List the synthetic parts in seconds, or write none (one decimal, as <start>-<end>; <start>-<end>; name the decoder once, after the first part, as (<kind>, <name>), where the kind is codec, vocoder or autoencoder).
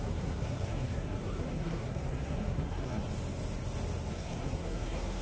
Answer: 0.0-3.0 (codec, SNAC); 4.1-5.2